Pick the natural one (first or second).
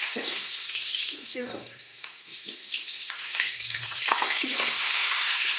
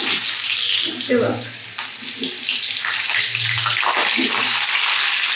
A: second